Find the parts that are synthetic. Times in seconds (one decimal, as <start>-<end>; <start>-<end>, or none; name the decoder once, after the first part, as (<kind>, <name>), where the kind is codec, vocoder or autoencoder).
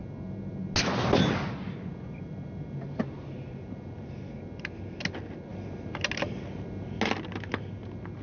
none